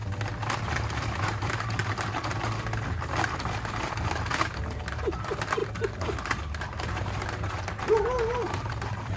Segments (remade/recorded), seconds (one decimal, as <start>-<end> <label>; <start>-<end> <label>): 0.0-0.6 recorded; 0.6-1.8 remade; 1.8-4.9 recorded; 4.9-5.6 remade; 5.6-6.6 recorded; 6.6-9.2 remade

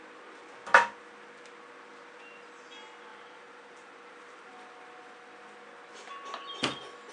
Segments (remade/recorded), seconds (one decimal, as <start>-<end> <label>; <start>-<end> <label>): 0.0-3.1 recorded; 3.1-4.5 remade; 4.5-7.1 recorded

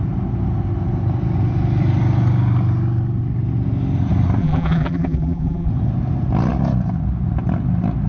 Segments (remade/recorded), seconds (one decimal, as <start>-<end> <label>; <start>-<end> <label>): 0.0-4.4 recorded; 4.4-5.7 remade; 5.7-8.1 recorded

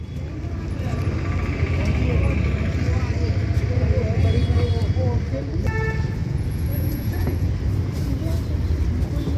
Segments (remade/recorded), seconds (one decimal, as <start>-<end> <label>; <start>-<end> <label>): 0.0-6.2 recorded; 6.2-7.5 remade; 7.5-9.4 recorded

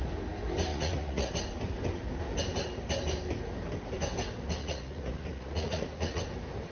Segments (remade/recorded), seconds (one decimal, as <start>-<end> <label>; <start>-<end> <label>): 0.0-0.7 recorded; 0.7-1.3 remade; 1.3-4.6 recorded; 4.6-6.2 remade; 6.2-6.7 recorded

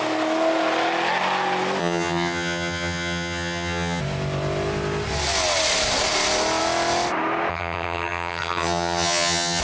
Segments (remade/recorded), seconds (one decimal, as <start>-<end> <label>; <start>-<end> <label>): 0.0-1.8 recorded; 1.8-4.0 remade; 4.0-7.5 recorded; 7.5-9.6 remade

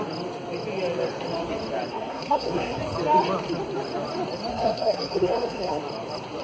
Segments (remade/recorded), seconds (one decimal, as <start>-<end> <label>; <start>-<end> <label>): 0.0-1.9 recorded; 1.9-2.8 remade; 2.8-4.5 recorded; 4.5-5.8 remade; 5.8-6.4 recorded

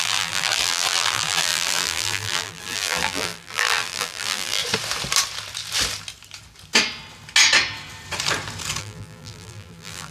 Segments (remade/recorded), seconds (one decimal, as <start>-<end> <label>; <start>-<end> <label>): 0.0-4.6 remade; 4.6-8.8 recorded; 8.8-10.1 remade